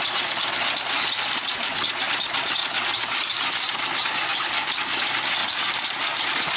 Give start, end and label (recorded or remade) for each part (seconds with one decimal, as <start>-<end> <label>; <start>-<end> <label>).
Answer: 0.0-2.6 recorded; 2.6-3.4 remade; 3.4-5.4 recorded; 5.4-6.6 remade